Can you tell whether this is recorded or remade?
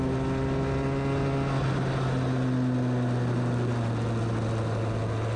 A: recorded